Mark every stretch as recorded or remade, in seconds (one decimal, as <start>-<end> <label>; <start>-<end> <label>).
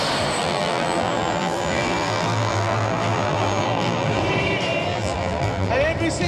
0.0-0.4 recorded; 0.4-4.2 remade; 4.2-4.9 recorded; 4.9-5.7 remade; 5.7-6.3 recorded